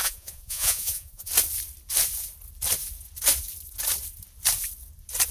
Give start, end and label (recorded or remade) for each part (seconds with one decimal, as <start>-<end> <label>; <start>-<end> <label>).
0.0-1.3 remade; 1.3-5.3 recorded